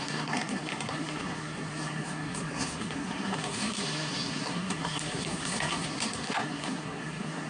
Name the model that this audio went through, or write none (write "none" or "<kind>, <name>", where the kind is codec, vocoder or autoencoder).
codec, SNAC